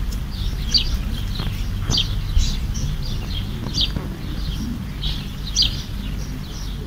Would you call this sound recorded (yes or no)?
yes